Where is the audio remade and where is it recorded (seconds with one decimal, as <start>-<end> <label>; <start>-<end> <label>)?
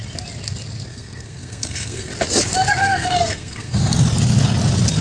0.0-0.9 recorded; 0.9-2.1 remade; 2.1-2.8 recorded; 2.8-3.8 remade; 3.8-5.0 recorded